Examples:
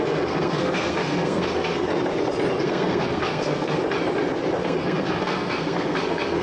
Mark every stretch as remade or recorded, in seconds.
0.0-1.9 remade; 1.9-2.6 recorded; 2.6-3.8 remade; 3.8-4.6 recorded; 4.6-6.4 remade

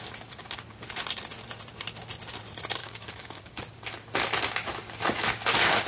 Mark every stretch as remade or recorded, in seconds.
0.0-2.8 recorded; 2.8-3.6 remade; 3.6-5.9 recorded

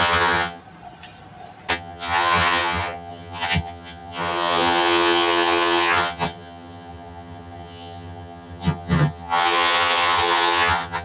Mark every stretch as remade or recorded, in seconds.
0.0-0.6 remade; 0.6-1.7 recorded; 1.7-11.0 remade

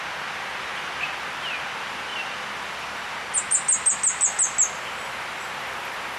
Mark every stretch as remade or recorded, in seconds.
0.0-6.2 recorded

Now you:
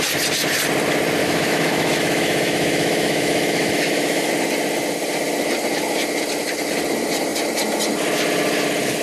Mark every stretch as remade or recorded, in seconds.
0.0-1.2 recorded; 1.2-4.3 remade; 4.3-9.0 recorded

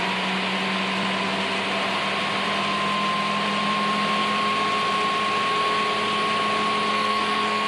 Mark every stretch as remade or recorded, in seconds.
0.0-6.9 recorded; 6.9-7.7 remade

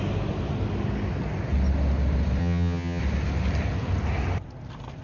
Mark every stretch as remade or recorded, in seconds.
0.0-2.4 recorded; 2.4-3.0 remade; 3.0-5.0 recorded